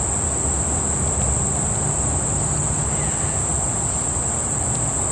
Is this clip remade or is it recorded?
recorded